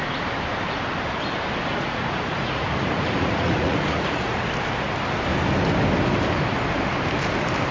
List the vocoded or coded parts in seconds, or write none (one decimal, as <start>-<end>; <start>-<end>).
1.7-4.4